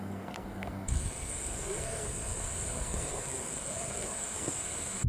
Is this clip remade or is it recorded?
remade